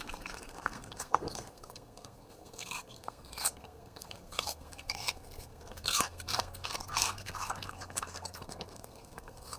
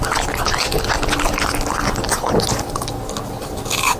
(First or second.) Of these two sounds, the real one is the second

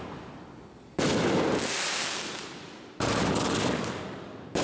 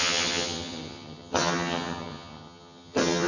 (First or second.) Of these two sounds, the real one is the first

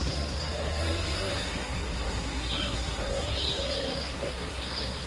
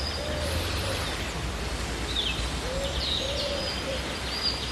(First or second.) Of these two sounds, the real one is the second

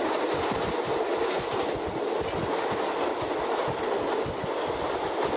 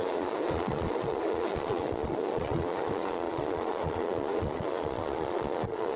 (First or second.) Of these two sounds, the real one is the first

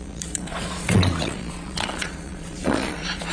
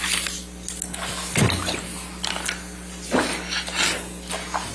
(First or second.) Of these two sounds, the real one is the second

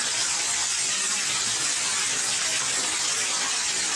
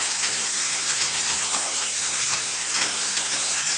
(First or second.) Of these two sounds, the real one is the first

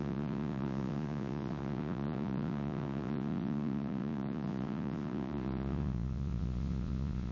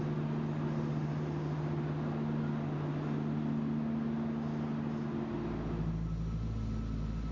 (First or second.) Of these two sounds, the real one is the second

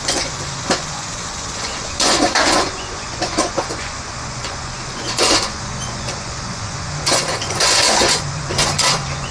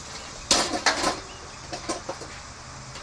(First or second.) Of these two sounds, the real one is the second